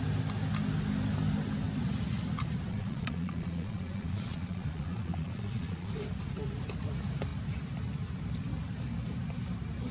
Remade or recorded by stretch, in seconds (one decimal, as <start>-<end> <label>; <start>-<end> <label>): 0.0-2.7 recorded; 2.7-5.9 remade; 5.9-9.9 recorded